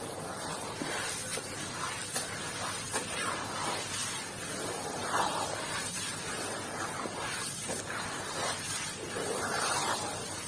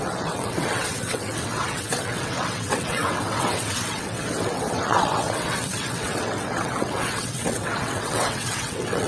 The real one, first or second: first